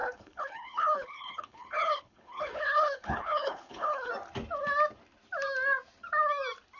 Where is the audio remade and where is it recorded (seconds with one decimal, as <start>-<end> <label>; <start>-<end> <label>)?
0.0-4.1 remade; 4.1-6.8 recorded